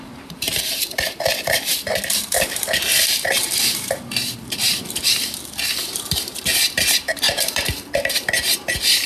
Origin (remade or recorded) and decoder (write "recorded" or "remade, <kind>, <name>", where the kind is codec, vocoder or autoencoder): remade, vocoder, BigVGAN v2